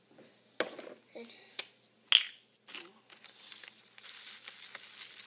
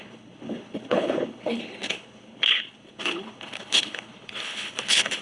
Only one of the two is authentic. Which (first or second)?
first